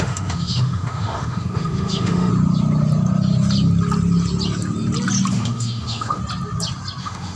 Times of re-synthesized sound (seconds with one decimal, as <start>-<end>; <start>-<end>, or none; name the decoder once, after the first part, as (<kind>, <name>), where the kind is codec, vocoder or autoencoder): 0.0-2.3 (autoencoder, DAC-VAE); 5.3-6.2; 7.0-7.4